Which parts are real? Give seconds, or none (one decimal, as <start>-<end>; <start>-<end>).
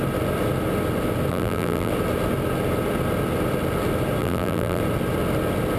0.0-1.3; 1.9-4.2; 4.8-5.8